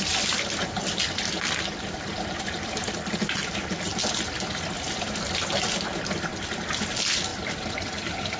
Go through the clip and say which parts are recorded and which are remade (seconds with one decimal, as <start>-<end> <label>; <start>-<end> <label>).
0.0-8.4 recorded